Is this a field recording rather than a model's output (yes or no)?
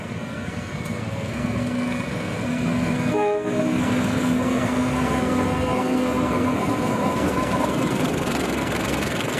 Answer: no